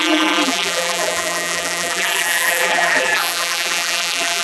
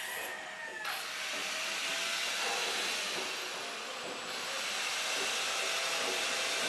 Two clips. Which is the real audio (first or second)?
second